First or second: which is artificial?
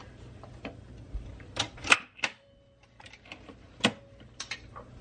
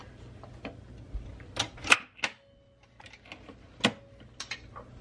first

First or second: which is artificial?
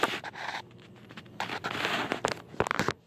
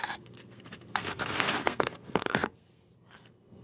second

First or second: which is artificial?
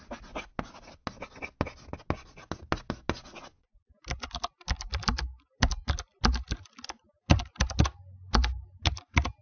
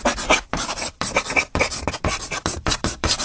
second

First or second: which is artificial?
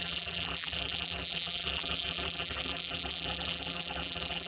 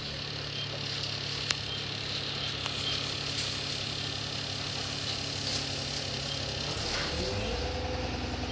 first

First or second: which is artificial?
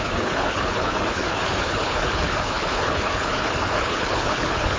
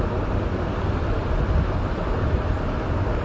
first